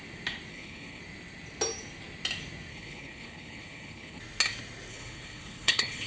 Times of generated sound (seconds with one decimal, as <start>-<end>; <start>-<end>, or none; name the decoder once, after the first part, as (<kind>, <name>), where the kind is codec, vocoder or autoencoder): 0.5-1.0 (codec, HILCodec); 2.7-4.2; 4.9-6.1